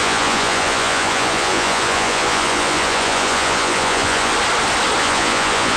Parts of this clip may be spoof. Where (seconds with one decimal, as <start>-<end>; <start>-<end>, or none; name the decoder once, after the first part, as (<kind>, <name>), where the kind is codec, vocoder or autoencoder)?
0.0-4.3 (vocoder, Vocos); 5.0-5.8